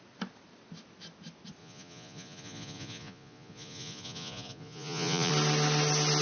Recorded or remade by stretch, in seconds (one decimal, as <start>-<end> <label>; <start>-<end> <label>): 0.0-1.6 recorded; 1.6-5.3 remade; 5.3-6.2 recorded